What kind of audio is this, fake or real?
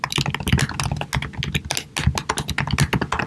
real